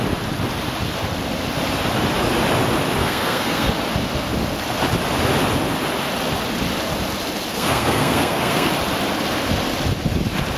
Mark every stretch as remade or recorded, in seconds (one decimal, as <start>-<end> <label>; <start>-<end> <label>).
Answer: 0.0-3.0 recorded; 3.0-3.7 remade; 3.7-7.5 recorded; 7.5-8.7 remade; 8.7-10.6 recorded